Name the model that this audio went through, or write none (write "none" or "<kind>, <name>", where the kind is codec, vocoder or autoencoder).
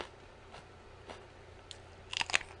none